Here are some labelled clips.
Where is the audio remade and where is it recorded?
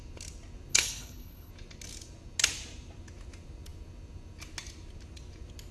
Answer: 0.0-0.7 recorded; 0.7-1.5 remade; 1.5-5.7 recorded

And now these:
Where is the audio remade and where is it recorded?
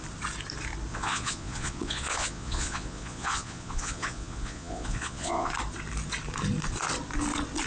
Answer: 0.0-0.9 recorded; 0.9-5.5 remade; 5.5-7.7 recorded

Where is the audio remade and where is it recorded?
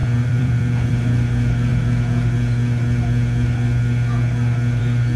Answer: 0.0-0.9 remade; 0.9-5.2 recorded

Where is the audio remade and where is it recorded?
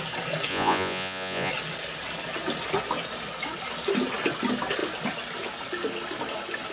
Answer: 0.0-0.5 recorded; 0.5-1.5 remade; 1.5-6.7 recorded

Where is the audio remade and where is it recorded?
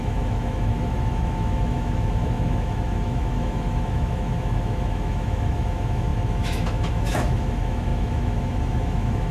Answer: 0.0-9.3 remade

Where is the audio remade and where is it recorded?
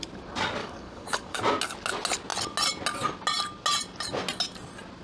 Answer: 0.0-0.6 recorded; 0.6-1.4 remade; 1.4-5.0 recorded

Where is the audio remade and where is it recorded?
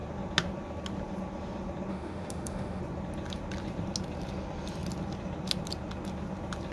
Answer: 0.0-1.9 recorded; 1.9-2.8 remade; 2.8-6.7 recorded